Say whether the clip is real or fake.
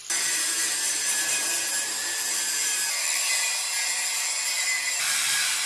fake